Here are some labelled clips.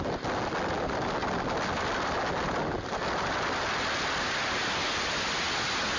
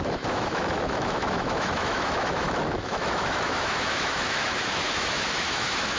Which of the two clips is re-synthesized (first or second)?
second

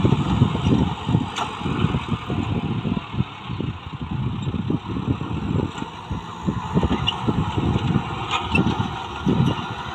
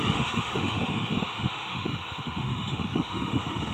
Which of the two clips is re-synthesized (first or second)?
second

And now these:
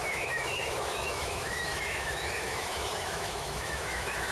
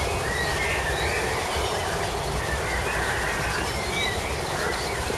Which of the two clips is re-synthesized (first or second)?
first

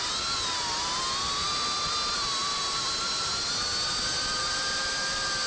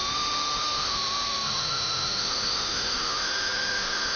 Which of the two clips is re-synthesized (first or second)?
second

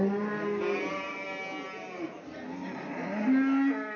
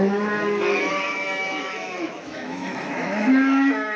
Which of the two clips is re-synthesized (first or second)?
second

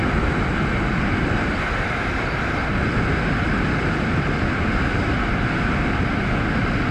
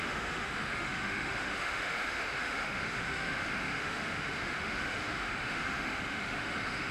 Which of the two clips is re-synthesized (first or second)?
second